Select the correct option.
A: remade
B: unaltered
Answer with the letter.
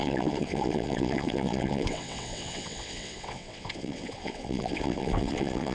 A